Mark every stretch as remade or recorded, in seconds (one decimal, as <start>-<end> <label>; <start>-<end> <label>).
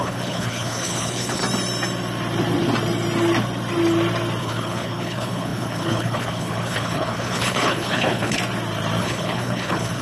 0.0-1.4 remade; 1.4-4.4 recorded; 4.4-8.4 remade; 8.4-9.0 recorded; 9.0-10.0 remade